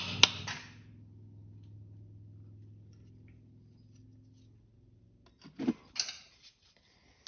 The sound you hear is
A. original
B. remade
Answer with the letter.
A